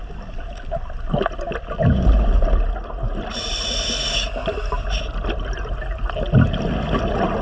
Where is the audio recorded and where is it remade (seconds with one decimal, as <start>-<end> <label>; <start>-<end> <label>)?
0.0-7.4 recorded